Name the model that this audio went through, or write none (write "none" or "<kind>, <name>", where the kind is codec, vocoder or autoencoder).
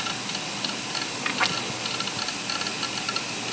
none